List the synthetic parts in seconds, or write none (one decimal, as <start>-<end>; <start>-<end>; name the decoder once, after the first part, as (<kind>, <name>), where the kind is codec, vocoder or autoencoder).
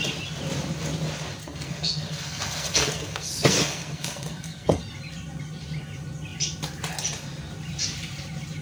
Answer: 1.4-4.8 (codec, SNAC)